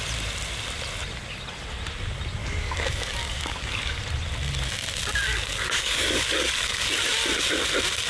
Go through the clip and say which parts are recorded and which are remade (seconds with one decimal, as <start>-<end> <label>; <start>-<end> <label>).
0.0-2.4 recorded; 2.4-4.0 remade; 4.0-5.3 recorded; 5.3-6.9 remade; 6.9-8.1 recorded